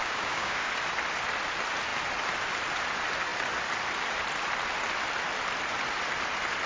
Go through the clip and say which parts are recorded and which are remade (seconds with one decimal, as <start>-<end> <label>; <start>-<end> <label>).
0.0-0.7 remade; 0.7-6.7 recorded